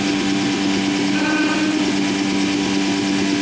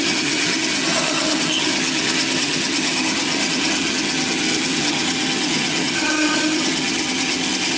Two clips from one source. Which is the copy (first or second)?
second